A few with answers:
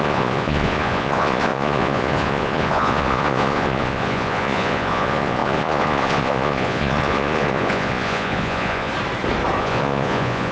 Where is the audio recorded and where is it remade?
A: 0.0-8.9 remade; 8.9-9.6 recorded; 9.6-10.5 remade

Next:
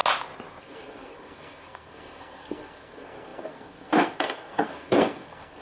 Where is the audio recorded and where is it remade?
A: 0.0-0.6 recorded; 0.6-5.6 remade

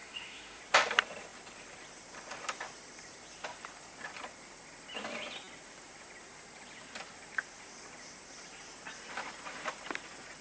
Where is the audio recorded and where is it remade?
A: 0.0-0.6 remade; 0.6-10.4 recorded

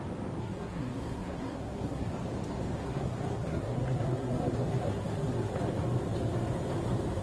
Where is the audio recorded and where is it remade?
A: 0.0-0.4 recorded; 0.4-2.1 remade; 2.1-2.8 recorded; 2.8-5.5 remade; 5.5-7.2 recorded

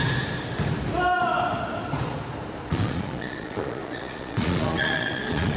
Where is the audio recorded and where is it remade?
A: 0.0-2.7 recorded; 2.7-5.6 remade

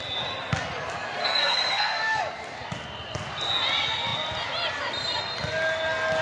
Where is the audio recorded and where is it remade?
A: 0.0-1.2 recorded; 1.2-2.2 remade; 2.2-6.2 recorded

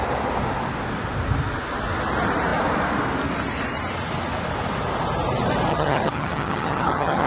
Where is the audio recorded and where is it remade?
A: 0.0-5.7 recorded; 5.7-7.3 remade

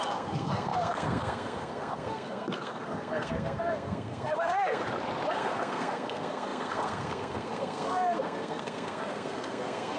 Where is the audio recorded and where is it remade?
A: 0.0-4.8 remade; 4.8-5.3 recorded; 5.3-10.0 remade